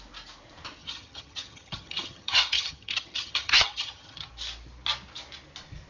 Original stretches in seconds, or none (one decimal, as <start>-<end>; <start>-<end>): 0.0-0.8; 4.3-5.9